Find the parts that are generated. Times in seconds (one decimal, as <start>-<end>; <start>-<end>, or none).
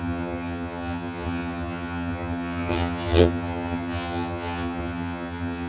0.0-5.7